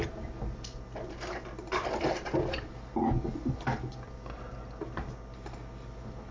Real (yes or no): yes